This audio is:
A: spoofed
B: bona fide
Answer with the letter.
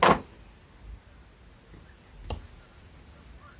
B